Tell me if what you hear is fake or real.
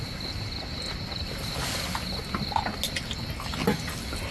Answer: real